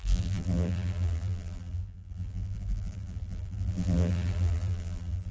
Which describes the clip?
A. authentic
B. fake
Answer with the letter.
B